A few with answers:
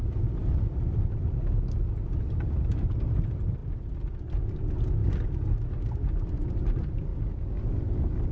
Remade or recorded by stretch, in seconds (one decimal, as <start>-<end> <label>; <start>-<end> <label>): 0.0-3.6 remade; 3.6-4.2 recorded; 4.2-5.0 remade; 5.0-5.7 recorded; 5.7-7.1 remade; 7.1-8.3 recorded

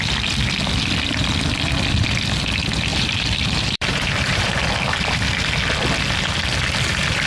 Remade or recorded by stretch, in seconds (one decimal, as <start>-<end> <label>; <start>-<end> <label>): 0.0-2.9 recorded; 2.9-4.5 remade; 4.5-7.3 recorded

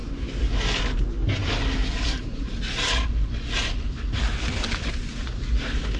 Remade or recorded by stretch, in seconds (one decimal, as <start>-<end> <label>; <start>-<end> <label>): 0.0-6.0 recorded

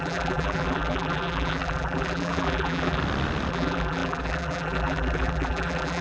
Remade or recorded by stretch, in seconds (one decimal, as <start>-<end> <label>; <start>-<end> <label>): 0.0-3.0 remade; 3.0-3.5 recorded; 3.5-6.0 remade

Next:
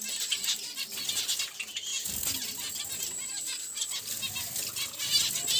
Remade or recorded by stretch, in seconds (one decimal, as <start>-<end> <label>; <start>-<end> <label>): 0.0-1.9 remade; 1.9-5.6 recorded

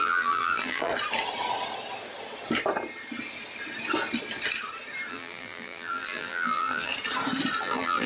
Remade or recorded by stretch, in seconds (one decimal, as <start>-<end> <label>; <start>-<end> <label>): 0.0-0.9 remade; 0.9-5.1 recorded; 5.1-6.9 remade; 6.9-7.6 recorded; 7.6-8.1 remade

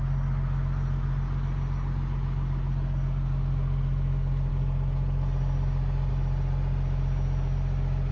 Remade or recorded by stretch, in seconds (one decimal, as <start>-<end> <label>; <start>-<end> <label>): 0.0-8.1 recorded